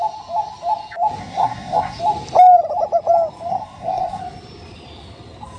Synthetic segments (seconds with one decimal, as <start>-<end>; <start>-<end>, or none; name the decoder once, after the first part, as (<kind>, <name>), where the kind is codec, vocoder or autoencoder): 1.2-2.0 (codec, SNAC); 3.5-4.2